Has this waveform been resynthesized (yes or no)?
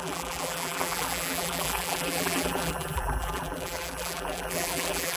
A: yes